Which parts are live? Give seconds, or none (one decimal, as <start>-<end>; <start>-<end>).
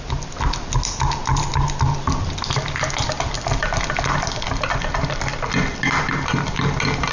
0.0-7.1